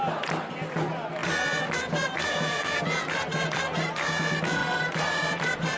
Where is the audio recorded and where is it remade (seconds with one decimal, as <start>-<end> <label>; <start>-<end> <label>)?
0.0-1.2 recorded; 1.2-3.6 remade; 3.6-4.6 recorded; 4.6-5.8 remade